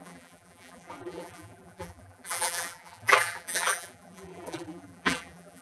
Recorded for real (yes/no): no